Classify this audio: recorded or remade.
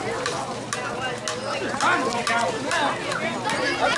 recorded